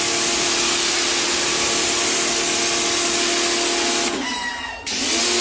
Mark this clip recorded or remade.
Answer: recorded